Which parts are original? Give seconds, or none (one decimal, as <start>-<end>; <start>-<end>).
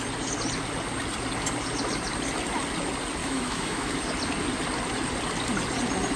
0.0-3.2; 4.0-6.2